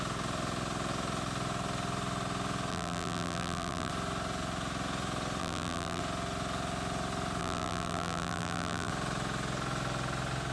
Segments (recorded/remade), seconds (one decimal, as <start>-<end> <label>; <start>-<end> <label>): 0.0-2.7 recorded; 2.7-3.9 remade; 3.9-5.4 recorded; 5.4-6.0 remade; 6.0-7.4 recorded; 7.4-8.9 remade; 8.9-10.5 recorded